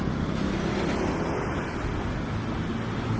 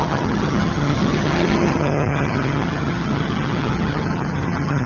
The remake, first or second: second